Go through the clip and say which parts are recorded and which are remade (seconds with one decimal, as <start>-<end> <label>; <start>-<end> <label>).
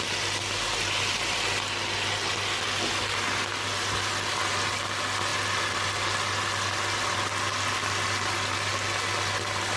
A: 0.0-9.8 recorded